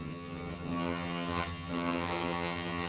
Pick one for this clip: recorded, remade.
remade